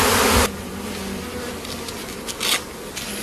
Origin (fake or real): real